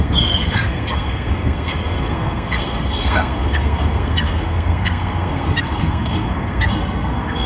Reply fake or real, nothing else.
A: fake